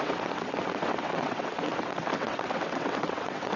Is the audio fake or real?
fake